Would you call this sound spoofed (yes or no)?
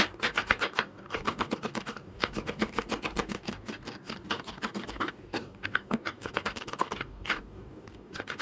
yes